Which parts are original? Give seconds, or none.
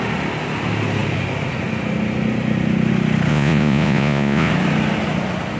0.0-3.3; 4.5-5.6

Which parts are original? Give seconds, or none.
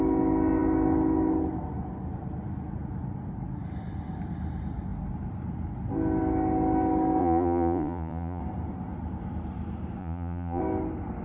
0.0-7.2; 8.4-10.0; 10.6-11.2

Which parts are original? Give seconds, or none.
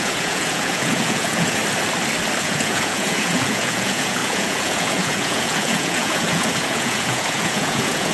1.6-2.4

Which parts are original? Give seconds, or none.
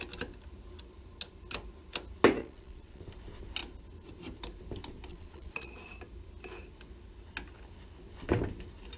0.0-2.4; 3.0-5.1; 5.7-9.0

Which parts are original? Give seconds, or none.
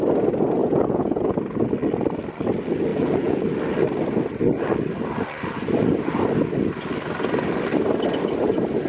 0.0-0.6; 1.4-2.9; 3.4-8.9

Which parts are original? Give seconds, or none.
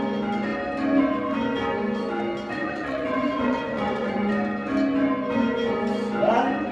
0.0-2.6; 4.3-6.7